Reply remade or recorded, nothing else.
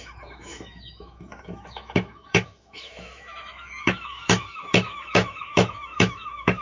remade